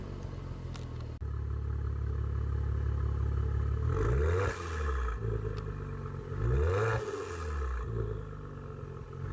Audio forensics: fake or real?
real